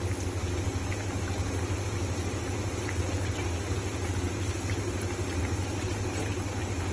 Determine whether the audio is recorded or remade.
recorded